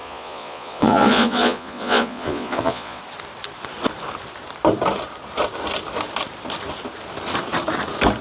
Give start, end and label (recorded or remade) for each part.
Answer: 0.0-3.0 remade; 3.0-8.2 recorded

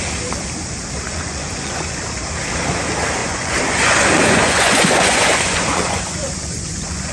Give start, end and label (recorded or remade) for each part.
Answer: 0.0-1.1 recorded; 1.1-2.0 remade; 2.0-3.2 recorded; 3.2-7.1 remade

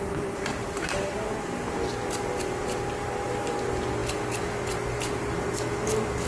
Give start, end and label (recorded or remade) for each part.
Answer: 0.0-6.3 recorded

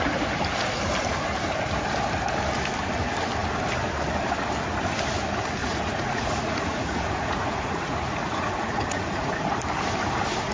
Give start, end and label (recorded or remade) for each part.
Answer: 0.0-5.6 recorded; 5.6-9.4 remade; 9.4-10.5 recorded

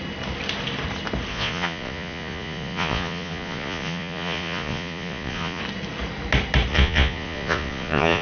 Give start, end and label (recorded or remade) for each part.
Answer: 0.0-1.3 recorded; 1.3-5.6 remade; 5.6-6.7 recorded; 6.7-8.2 remade